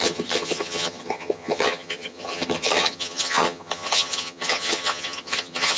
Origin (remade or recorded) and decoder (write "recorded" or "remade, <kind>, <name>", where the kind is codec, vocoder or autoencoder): remade, vocoder, HiFi-GAN